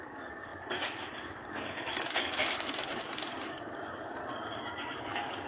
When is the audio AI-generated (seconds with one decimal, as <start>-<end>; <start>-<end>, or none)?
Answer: 0.0-4.2; 5.0-5.5